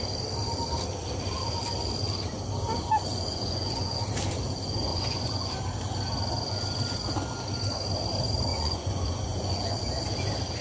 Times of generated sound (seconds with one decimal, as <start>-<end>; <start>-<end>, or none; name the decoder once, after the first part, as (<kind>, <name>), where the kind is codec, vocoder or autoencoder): 3.1-4.0 (vocoder, Vocos); 4.9-5.5; 8.5-9.7